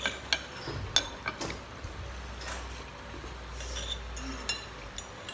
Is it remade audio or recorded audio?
recorded